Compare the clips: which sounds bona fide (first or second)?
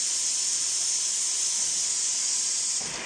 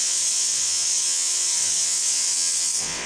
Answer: first